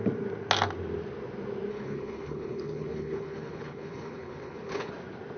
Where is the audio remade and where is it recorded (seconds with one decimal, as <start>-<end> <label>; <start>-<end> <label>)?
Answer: 0.0-1.7 recorded; 1.7-4.9 remade; 4.9-5.4 recorded